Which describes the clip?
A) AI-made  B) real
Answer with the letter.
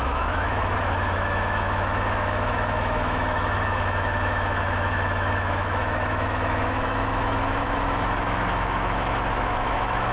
A